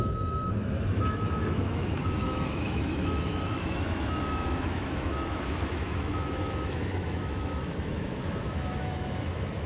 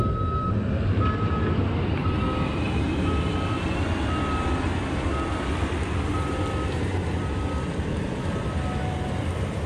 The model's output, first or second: first